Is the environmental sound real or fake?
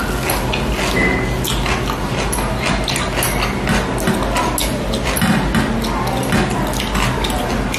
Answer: real